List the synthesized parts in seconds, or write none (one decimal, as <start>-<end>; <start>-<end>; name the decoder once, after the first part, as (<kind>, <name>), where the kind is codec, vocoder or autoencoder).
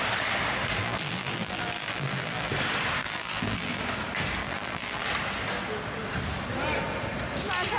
0.8-2.5 (vocoder, BigVGAN v2); 3.0-3.8; 4.4-5.0